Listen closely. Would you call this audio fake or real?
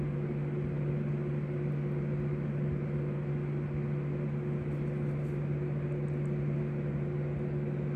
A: real